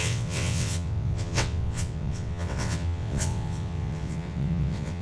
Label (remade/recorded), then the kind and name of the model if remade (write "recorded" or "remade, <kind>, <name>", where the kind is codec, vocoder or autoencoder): remade, vocoder, WaveNeXt